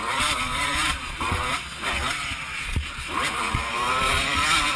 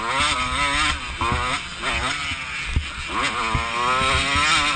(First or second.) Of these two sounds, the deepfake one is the first